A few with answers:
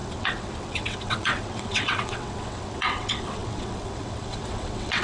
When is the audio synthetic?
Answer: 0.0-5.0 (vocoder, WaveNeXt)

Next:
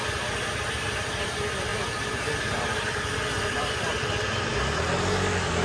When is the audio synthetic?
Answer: none

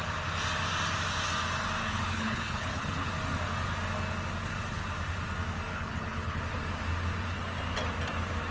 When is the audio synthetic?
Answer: 1.8-3.1 (codec, HILCodec); 5.7-6.4

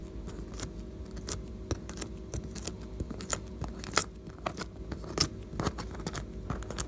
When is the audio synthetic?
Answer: 4.0-4.8 (vocoder, BigVGAN v2)

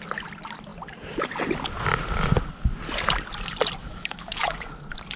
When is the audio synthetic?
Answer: 3.8-4.7 (autoencoder, DAC-VAE)

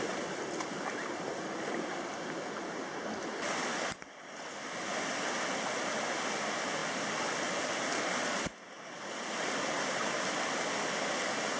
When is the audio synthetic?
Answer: none

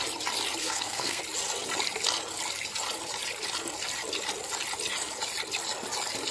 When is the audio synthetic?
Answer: 0.6-1.2 (codec, SNAC)

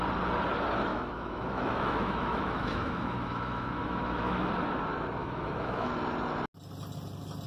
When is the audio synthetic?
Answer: 0.9-4.5 (autoencoder, DAC-VAE); 5.2-5.9